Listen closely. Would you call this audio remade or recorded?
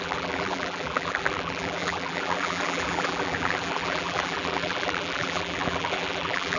remade